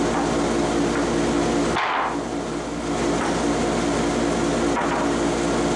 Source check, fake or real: real